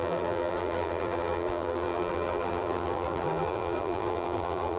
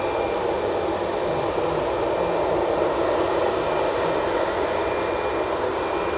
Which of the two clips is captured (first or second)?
second